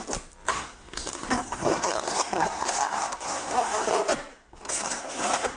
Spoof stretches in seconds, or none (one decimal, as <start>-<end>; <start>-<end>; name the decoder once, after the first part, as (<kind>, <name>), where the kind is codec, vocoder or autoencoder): 0.5-3.9 (codec, SNAC); 4.3-5.6